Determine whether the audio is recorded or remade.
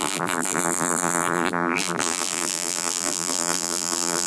remade